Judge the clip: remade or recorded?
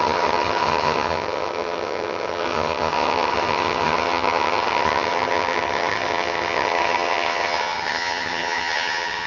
remade